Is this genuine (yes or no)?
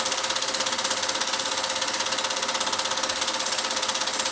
yes